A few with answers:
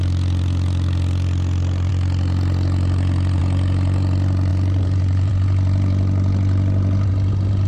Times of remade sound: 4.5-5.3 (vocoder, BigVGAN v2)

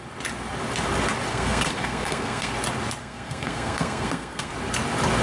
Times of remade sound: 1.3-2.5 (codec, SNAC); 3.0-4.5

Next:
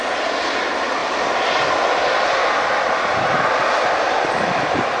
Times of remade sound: none